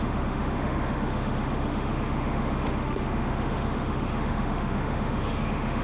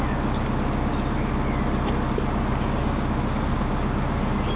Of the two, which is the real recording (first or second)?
second